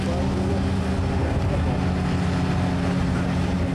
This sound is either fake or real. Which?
real